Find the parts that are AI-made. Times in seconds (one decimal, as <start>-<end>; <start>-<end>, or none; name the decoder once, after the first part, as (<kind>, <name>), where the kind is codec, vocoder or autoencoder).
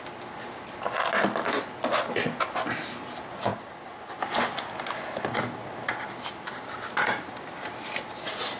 none